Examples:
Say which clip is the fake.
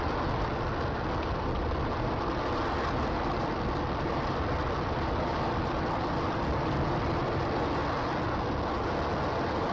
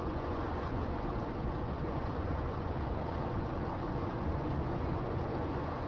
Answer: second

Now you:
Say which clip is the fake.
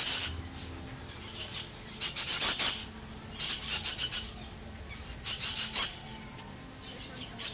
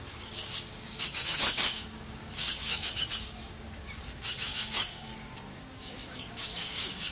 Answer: second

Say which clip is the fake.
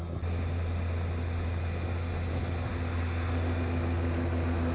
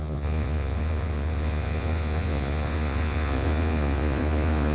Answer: second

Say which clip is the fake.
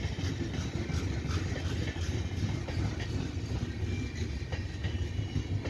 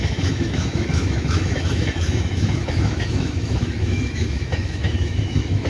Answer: second